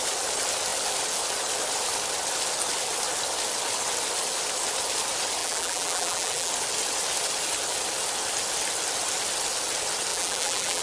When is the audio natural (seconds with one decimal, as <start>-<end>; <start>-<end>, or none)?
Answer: 0.0-5.4; 6.5-10.1